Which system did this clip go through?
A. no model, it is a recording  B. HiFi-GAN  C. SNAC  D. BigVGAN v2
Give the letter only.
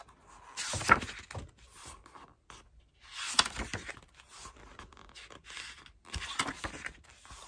A